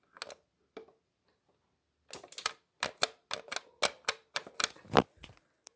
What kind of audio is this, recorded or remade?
recorded